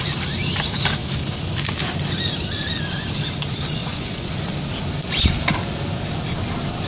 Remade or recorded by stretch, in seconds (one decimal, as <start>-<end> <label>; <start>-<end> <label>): 0.0-3.8 recorded; 3.8-4.3 remade; 4.3-6.9 recorded